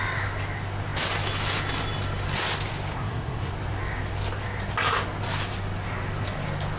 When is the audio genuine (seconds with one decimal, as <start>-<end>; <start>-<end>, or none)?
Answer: 0.0-2.9; 3.5-6.8